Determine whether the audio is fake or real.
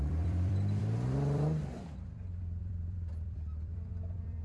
fake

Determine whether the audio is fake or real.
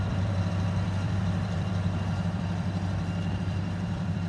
fake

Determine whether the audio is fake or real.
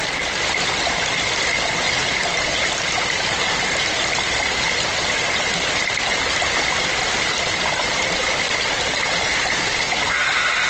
real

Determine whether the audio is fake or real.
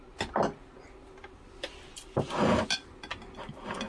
real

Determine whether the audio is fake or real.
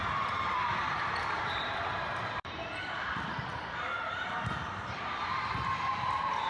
fake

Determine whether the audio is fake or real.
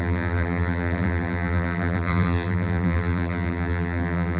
fake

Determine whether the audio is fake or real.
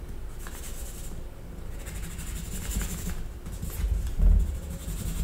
real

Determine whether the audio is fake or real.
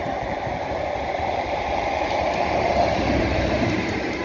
fake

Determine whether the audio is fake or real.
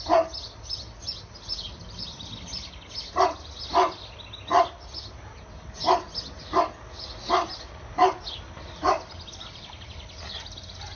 real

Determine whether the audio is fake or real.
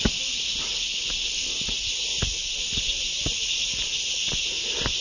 real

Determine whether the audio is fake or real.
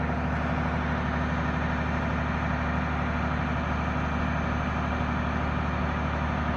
real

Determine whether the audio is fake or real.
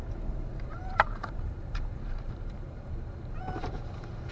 fake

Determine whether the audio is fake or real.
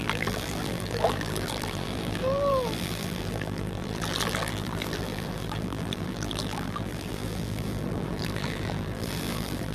fake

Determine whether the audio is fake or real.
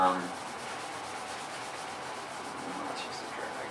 real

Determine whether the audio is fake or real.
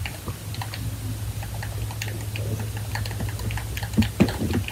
real